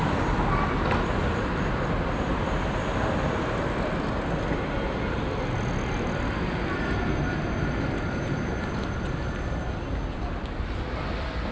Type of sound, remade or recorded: recorded